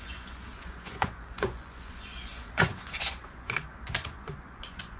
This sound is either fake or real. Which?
fake